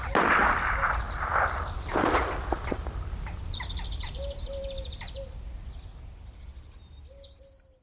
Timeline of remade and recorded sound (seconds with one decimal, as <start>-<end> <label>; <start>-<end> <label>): 0.0-7.8 recorded